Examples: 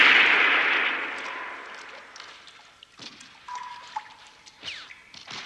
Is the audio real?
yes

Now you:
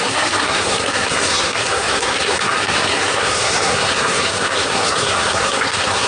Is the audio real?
no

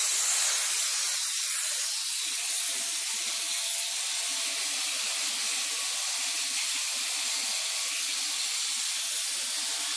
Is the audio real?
yes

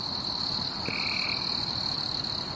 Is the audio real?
yes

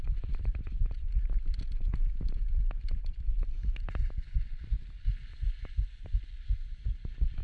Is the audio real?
yes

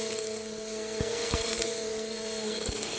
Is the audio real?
no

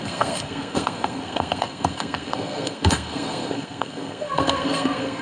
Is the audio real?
no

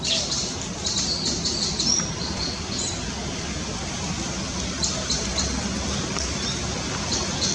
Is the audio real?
yes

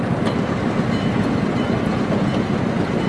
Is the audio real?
yes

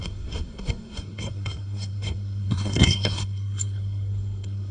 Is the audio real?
no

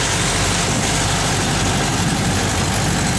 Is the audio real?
yes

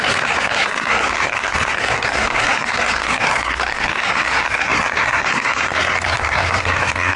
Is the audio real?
no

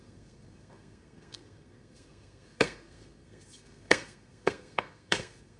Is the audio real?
no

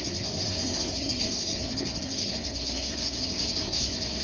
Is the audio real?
no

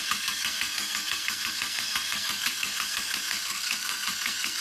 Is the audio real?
no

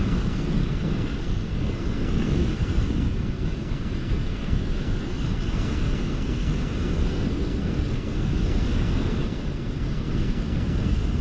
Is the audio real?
no